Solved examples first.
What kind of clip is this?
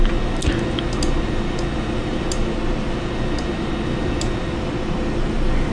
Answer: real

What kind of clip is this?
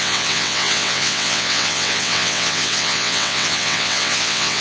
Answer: fake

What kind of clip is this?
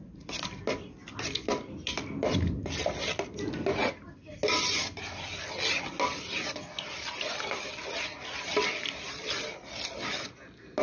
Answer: real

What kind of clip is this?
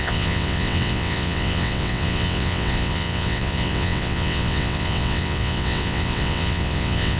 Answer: fake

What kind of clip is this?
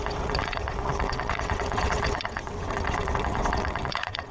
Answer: fake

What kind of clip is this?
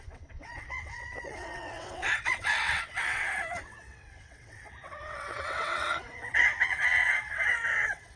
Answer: fake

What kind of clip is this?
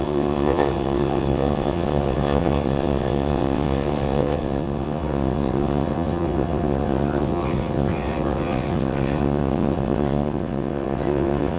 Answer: fake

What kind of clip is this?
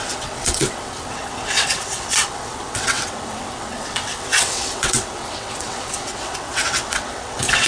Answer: fake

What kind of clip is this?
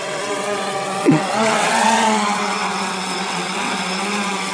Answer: fake